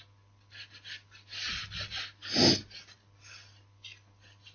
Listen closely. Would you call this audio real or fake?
real